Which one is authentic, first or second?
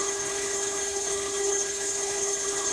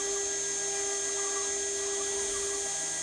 second